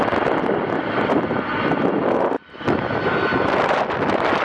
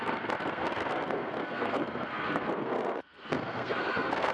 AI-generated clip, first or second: second